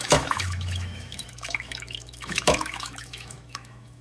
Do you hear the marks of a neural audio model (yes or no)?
yes